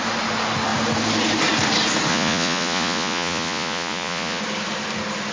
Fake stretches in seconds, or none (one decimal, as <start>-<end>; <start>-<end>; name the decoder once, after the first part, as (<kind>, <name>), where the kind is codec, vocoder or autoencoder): 2.1-4.4 (vocoder, Vocos)